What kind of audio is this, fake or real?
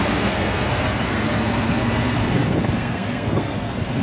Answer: fake